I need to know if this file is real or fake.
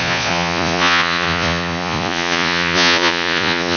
fake